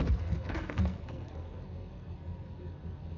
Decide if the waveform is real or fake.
fake